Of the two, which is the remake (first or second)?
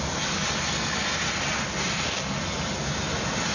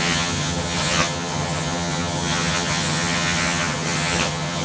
second